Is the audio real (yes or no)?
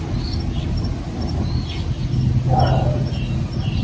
yes